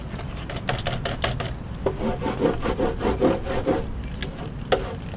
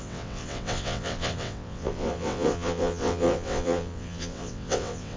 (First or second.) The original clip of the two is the first